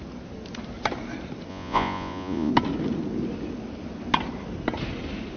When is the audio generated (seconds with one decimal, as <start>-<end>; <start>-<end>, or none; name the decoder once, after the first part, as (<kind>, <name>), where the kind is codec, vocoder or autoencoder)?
1.5-2.5 (vocoder, Vocos)